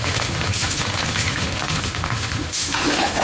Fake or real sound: fake